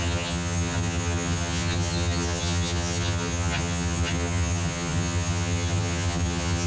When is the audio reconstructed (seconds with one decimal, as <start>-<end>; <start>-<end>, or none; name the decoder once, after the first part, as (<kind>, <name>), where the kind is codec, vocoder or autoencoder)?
0.0-6.7 (vocoder, HiFi-GAN)